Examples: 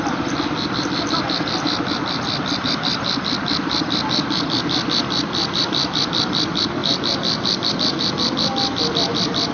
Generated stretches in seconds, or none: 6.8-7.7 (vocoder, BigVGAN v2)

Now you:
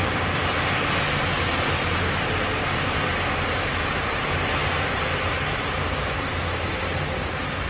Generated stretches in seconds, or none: none

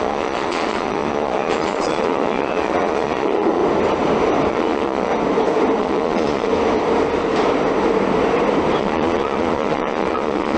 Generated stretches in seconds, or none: 0.0-3.6 (vocoder, Vocos); 4.5-5.1; 5.8-6.5; 8.8-10.6

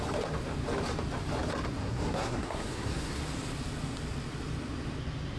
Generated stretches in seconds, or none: 1.8-3.2 (codec, SNAC)